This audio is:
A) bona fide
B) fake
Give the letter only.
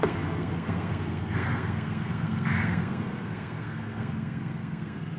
B